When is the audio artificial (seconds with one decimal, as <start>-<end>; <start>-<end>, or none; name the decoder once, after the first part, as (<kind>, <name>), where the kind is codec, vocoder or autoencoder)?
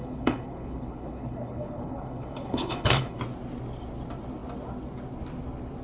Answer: 0.0-3.2 (codec, HILCodec)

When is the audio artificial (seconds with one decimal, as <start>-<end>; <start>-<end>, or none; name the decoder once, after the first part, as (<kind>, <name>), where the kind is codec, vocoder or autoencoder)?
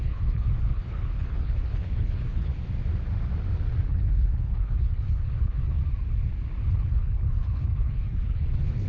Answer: 0.0-2.5 (codec, HILCodec); 3.9-5.8; 6.7-8.9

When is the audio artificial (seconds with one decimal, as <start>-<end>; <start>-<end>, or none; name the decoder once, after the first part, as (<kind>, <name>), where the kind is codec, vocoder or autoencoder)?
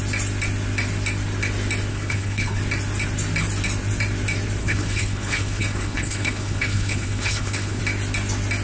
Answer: 1.9-2.6 (codec, HILCodec); 4.6-7.8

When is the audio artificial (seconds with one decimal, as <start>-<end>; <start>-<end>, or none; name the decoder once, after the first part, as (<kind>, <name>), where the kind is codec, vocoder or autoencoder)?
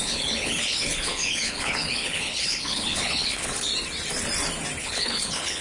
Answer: 0.0-3.7 (codec, HILCodec); 4.8-5.6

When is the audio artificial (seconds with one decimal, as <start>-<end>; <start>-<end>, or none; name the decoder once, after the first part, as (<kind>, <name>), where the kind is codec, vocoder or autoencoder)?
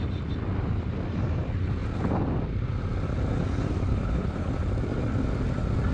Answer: 3.9-4.5 (codec, HILCodec)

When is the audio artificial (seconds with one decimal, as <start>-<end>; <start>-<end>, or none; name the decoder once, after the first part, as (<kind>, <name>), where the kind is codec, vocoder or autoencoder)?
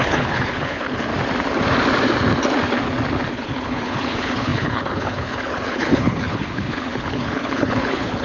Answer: 0.0-1.1 (codec, HILCodec); 3.3-8.2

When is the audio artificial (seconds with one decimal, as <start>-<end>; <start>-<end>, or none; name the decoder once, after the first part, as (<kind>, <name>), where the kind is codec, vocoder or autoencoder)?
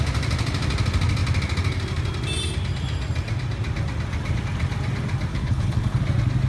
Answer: 5.3-6.0 (codec, HILCodec)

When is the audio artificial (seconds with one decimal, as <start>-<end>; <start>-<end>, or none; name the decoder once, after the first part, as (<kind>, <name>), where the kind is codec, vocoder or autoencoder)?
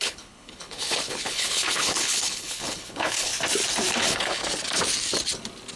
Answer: 0.0-3.3 (codec, HILCodec); 4.0-4.4